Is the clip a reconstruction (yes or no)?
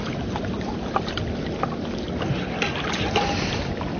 no